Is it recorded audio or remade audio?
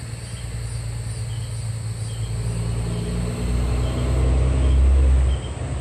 recorded